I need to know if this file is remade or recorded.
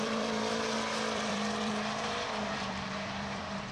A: remade